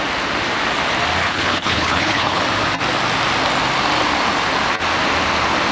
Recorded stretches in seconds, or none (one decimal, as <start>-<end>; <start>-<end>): 0.0-1.2; 2.4-5.7